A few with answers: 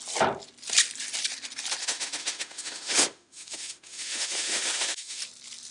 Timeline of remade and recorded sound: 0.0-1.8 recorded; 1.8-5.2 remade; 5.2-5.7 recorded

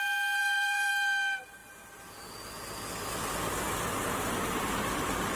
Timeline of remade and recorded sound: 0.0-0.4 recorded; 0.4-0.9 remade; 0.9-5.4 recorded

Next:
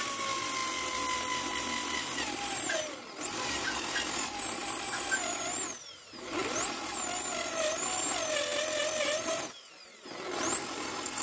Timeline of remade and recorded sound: 0.0-11.2 recorded

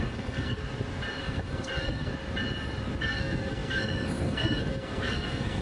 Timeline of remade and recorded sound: 0.0-0.6 remade; 0.6-1.2 recorded; 1.2-2.1 remade; 2.1-3.0 recorded; 3.0-5.6 remade

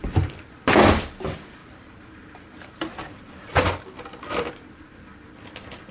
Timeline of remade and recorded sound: 0.0-1.6 recorded; 1.6-4.5 remade; 4.5-5.9 recorded

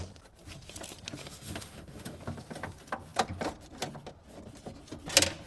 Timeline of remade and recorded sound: 0.0-1.2 recorded; 1.2-2.2 remade; 2.2-5.5 recorded

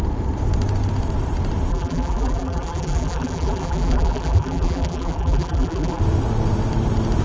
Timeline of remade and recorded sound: 0.0-1.7 recorded; 1.7-6.0 remade; 6.0-7.2 recorded